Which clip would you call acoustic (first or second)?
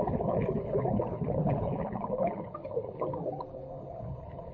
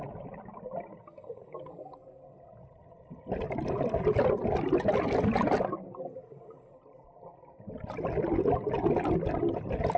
second